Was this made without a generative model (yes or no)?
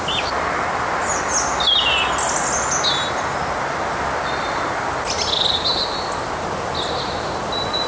yes